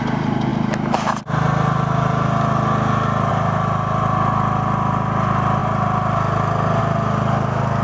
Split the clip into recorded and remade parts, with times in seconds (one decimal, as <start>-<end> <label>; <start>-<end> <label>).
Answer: 0.0-7.8 recorded